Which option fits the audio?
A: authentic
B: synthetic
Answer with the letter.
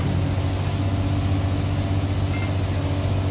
A